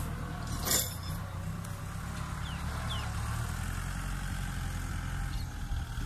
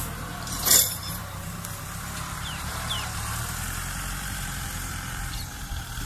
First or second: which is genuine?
first